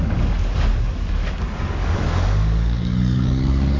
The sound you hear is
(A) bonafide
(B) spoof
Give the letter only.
B